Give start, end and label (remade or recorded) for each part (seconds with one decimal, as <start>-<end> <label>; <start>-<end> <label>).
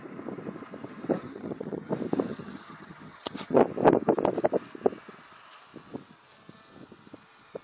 0.0-1.2 recorded; 1.2-1.9 remade; 1.9-2.3 recorded; 2.3-3.6 remade; 3.6-7.6 recorded